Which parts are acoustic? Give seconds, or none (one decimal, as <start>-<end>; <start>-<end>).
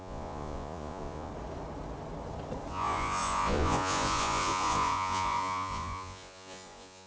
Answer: 1.3-2.7